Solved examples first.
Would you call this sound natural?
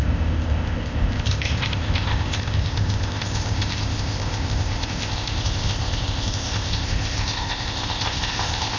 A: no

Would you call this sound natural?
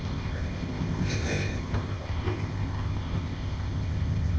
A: no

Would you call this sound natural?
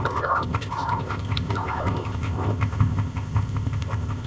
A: no